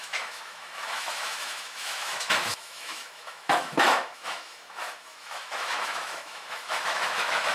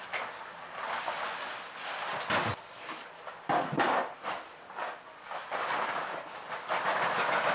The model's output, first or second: first